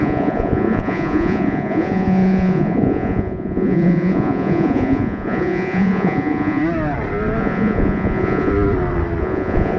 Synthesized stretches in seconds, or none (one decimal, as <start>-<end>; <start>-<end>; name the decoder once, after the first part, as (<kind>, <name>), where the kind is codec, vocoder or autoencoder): 0.0-6.6 (vocoder, Vocos); 7.4-8.5; 9.2-9.8